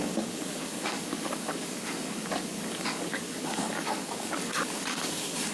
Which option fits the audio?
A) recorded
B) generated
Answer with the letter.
B